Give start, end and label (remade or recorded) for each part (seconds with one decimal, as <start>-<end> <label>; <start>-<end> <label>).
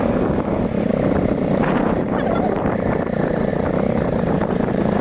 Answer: 0.0-0.9 recorded; 0.9-2.6 remade; 2.6-3.5 recorded; 3.5-5.0 remade